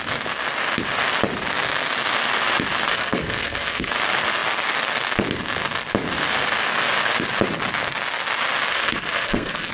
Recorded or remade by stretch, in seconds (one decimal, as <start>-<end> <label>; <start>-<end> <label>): 0.0-2.9 recorded; 2.9-3.9 remade; 3.9-8.7 recorded; 8.7-9.7 remade